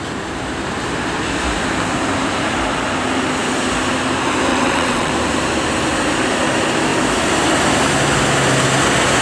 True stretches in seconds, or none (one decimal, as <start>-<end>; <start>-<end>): 0.0-4.5; 5.1-9.2